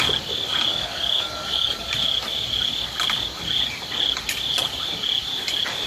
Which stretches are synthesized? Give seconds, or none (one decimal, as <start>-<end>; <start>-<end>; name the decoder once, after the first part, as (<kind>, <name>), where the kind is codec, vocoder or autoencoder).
0.7-1.8 (codec, DAC)